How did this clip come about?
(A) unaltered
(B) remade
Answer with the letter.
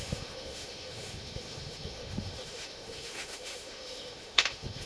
B